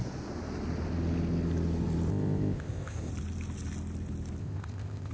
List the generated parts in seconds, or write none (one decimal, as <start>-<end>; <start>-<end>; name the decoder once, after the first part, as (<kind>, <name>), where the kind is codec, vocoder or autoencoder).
2.1-3.1 (codec, ZipCodec); 4.4-5.1